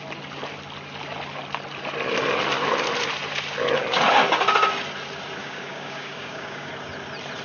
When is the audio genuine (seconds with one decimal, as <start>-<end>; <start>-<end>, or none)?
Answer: 0.0-5.4; 6.7-7.4